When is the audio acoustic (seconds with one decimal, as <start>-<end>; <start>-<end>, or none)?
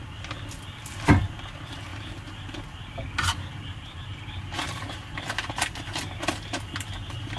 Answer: 0.0-1.9; 5.6-7.4